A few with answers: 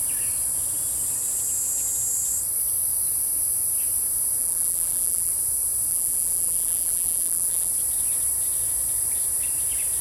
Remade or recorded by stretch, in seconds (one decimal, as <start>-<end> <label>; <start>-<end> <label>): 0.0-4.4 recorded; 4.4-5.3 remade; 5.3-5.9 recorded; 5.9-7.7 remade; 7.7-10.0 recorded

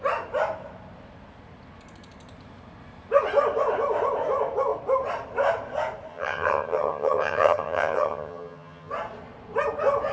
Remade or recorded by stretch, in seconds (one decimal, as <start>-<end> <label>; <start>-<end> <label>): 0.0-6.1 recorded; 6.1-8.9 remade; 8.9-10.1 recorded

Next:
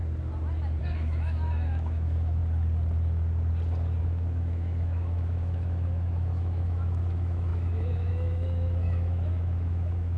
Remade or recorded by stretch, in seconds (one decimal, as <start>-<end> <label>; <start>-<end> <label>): 0.0-0.8 recorded; 0.8-2.4 remade; 2.4-4.0 recorded; 4.0-10.2 remade

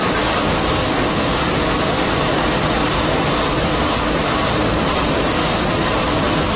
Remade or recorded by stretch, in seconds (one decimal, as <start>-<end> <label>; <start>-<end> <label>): 0.0-6.6 remade

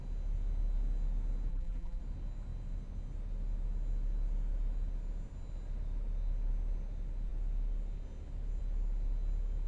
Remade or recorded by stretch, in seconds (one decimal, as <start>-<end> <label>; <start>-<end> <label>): 0.0-1.5 recorded; 1.5-2.0 remade; 2.0-9.7 recorded

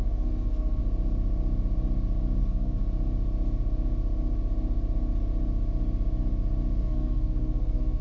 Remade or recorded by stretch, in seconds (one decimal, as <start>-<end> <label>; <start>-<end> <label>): 0.0-0.8 remade; 0.8-2.4 recorded; 2.4-2.8 remade; 2.8-6.8 recorded; 6.8-8.0 remade

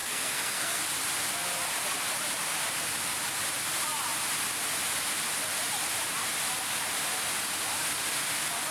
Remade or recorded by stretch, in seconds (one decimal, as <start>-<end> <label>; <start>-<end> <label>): 0.0-0.8 remade; 0.8-8.7 recorded